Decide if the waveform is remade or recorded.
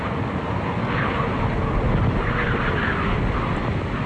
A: recorded